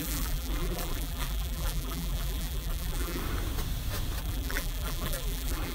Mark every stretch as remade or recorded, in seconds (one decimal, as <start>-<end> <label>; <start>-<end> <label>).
0.0-3.2 remade; 3.2-4.2 recorded; 4.2-5.7 remade